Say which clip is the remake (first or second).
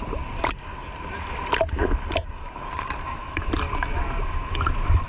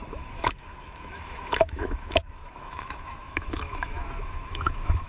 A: second